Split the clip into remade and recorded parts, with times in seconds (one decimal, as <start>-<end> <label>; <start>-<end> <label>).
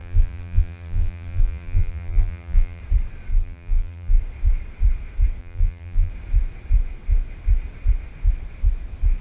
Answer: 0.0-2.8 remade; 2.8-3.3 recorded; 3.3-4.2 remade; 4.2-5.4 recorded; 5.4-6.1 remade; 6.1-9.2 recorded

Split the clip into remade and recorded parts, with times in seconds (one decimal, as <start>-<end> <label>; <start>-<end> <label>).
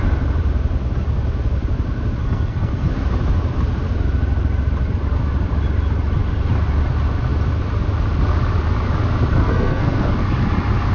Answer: 0.0-2.2 recorded; 2.2-2.9 remade; 2.9-9.4 recorded; 9.4-10.1 remade; 10.1-10.9 recorded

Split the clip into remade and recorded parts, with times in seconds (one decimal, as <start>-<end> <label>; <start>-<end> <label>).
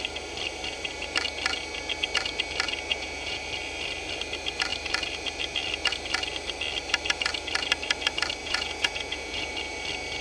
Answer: 0.0-2.9 recorded; 2.9-3.4 remade; 3.4-8.4 recorded; 8.4-9.5 remade; 9.5-10.2 recorded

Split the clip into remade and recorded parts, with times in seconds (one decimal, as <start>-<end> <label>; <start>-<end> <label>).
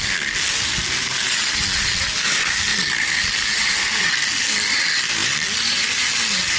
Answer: 0.0-6.6 recorded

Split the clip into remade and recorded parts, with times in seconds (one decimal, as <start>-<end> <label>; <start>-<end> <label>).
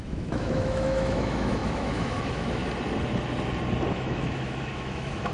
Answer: 0.0-2.6 remade; 2.6-3.9 recorded; 3.9-5.3 remade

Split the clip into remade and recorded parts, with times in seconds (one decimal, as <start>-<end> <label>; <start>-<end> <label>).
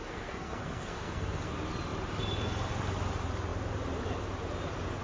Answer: 0.0-1.5 remade; 1.5-5.0 recorded